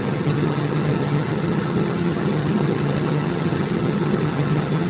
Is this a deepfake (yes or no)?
yes